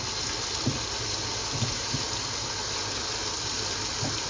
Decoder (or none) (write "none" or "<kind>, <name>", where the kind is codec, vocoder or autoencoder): none